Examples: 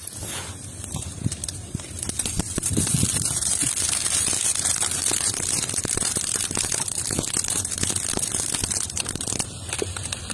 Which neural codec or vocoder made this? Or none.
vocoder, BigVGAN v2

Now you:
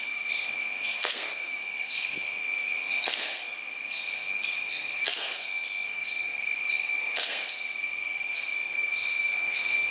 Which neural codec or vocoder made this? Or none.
codec, SNAC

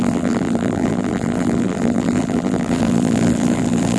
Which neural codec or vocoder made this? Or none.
vocoder, BigVGAN v2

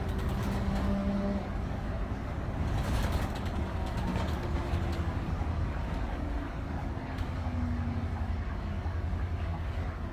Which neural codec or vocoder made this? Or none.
codec, DAC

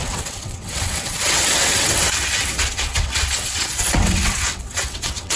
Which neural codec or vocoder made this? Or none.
vocoder, WaveNeXt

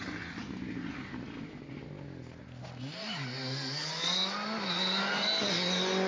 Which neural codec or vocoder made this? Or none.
none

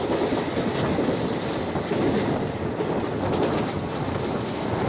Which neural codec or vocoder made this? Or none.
none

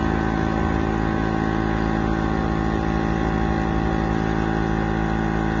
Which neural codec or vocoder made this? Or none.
none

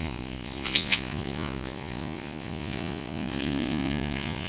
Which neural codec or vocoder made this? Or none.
vocoder, Vocos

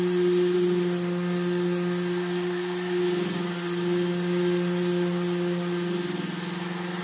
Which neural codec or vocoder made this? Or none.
none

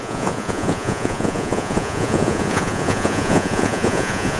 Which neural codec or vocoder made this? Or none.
vocoder, Vocos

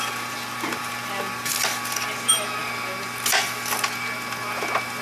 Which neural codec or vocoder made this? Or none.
none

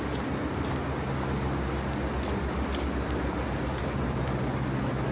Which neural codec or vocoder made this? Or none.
none